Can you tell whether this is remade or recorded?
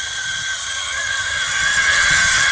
remade